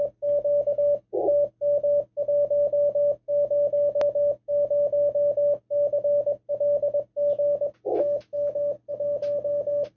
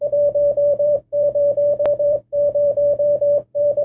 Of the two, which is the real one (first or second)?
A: first